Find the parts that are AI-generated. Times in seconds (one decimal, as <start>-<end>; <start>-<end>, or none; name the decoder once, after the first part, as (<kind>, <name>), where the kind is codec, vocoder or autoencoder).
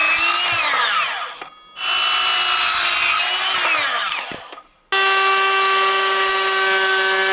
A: none